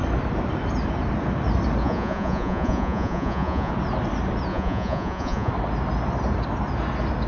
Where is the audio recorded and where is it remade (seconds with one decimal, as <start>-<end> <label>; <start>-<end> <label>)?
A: 0.0-1.8 recorded; 1.8-3.7 remade; 3.7-4.5 recorded; 4.5-5.5 remade; 5.5-7.3 recorded